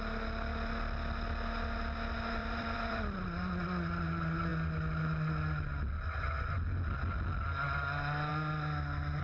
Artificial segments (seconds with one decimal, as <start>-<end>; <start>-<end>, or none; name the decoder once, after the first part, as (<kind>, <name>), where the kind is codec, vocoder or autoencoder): 2.4-3.2 (vocoder, BigVGAN v2)